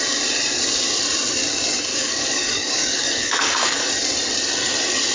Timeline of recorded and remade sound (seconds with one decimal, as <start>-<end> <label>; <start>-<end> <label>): 0.0-1.9 recorded; 1.9-3.9 remade; 3.9-5.1 recorded